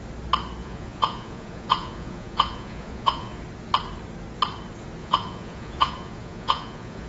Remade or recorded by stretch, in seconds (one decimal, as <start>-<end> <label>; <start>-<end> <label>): 0.0-0.6 recorded; 0.6-3.4 remade; 3.4-5.0 recorded; 5.0-7.1 remade